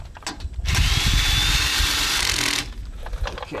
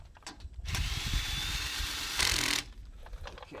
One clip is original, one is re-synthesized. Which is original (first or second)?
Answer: first